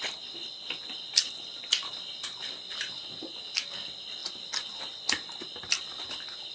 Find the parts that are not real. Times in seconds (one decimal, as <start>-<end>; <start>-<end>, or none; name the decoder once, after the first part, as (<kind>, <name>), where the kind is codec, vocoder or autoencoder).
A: none